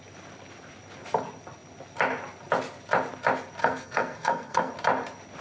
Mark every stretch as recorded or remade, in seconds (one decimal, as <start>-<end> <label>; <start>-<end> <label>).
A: 0.0-3.6 recorded; 3.6-4.7 remade; 4.7-5.4 recorded